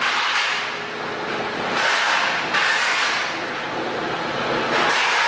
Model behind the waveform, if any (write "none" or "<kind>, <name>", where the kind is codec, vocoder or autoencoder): none